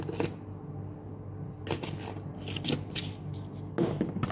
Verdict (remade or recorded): recorded